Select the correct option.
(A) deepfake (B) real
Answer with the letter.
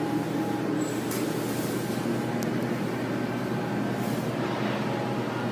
B